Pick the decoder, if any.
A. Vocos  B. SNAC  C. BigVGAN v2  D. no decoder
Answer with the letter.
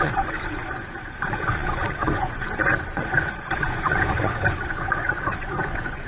A